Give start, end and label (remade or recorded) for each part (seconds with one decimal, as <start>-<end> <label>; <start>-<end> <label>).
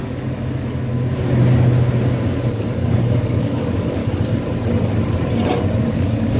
0.0-0.9 remade; 0.9-2.6 recorded; 2.6-4.0 remade; 4.0-5.9 recorded; 5.9-6.4 remade